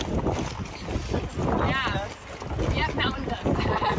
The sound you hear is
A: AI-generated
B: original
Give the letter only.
B